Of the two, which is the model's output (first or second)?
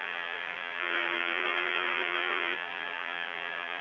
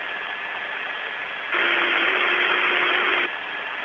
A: first